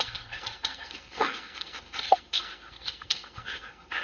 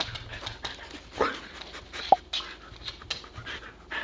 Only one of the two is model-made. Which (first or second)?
first